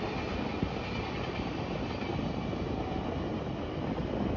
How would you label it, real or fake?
real